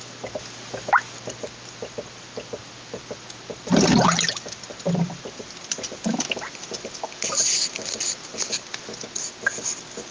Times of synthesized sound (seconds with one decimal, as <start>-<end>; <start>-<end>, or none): none